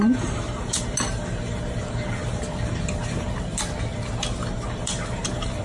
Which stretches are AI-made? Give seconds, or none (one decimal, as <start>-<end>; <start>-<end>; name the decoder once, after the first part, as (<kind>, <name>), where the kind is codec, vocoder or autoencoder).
none